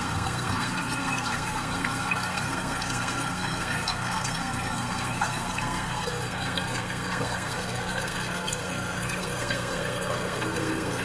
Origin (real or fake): fake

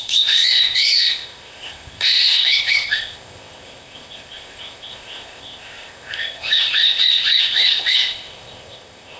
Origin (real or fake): fake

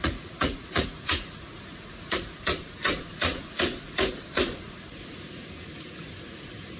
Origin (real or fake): fake